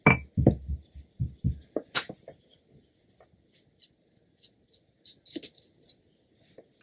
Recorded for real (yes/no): yes